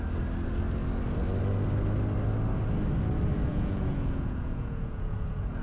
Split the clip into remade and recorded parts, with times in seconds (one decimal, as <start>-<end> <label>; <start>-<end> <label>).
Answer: 0.0-3.5 recorded; 3.5-5.6 remade